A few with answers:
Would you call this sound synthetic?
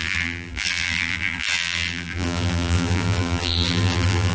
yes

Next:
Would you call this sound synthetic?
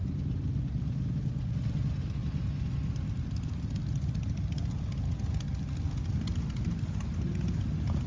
no